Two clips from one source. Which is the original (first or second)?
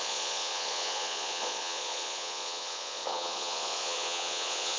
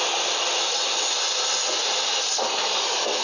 second